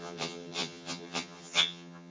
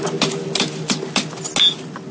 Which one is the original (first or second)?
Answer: second